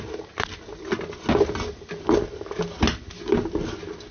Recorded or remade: recorded